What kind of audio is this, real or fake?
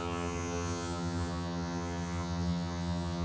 fake